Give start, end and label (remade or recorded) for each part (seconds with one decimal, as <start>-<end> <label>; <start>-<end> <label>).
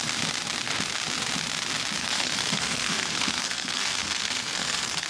0.0-2.0 recorded; 2.0-5.1 remade